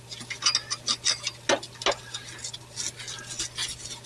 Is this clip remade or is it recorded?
recorded